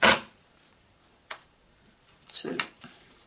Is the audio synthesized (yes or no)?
yes